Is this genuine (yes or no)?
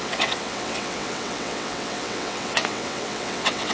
no